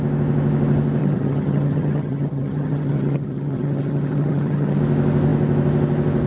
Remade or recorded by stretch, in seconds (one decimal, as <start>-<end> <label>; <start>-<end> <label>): 0.0-1.0 recorded; 1.0-4.8 remade; 4.8-6.3 recorded